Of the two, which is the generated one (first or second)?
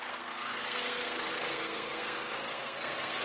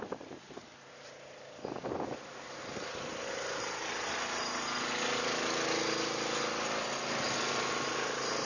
first